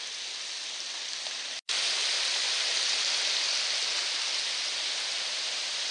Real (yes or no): yes